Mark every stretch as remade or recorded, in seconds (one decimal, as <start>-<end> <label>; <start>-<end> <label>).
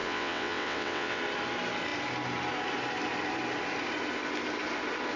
0.0-1.2 remade; 1.2-5.2 recorded